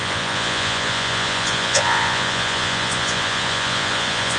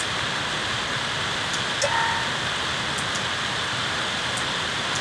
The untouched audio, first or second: second